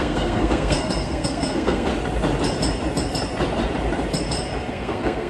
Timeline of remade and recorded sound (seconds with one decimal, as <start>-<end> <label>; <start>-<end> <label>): 0.0-1.9 remade; 1.9-4.7 recorded; 4.7-5.3 remade